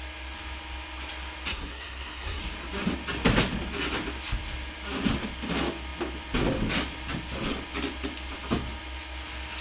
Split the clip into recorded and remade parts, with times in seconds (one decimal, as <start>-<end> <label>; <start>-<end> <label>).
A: 0.0-1.5 recorded; 1.5-2.4 remade; 2.4-9.6 recorded